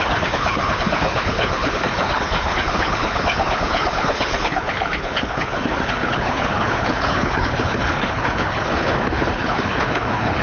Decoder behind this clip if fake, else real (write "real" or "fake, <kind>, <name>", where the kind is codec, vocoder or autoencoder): fake, codec, HILCodec